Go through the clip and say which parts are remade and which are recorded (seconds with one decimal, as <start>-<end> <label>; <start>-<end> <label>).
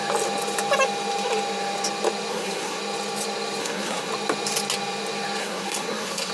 0.0-2.3 recorded; 2.3-2.8 remade; 2.8-3.6 recorded; 3.6-4.1 remade; 4.1-5.4 recorded; 5.4-6.3 remade